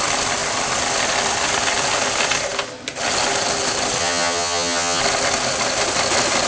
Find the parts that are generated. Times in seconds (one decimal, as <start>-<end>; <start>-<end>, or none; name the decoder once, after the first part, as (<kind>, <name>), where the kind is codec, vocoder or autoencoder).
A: 4.0-5.0 (vocoder, HiFi-GAN)